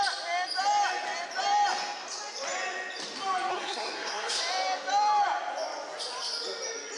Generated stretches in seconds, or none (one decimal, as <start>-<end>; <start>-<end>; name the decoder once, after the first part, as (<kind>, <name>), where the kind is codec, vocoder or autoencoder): 3.5-4.4 (codec, SNAC)